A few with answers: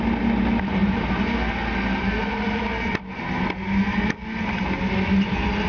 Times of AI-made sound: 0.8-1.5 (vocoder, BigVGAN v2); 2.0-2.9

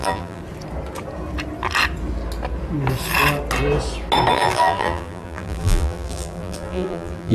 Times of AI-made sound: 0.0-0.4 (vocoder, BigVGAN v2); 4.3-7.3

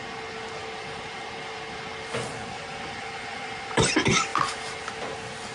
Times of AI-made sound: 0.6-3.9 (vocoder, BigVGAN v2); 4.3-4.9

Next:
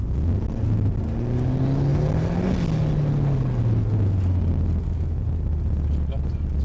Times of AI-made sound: none

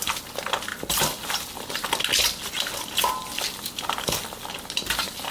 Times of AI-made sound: none

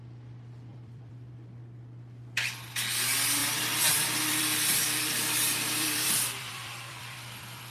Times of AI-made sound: 0.7-1.3 (vocoder, BigVGAN v2); 3.4-7.7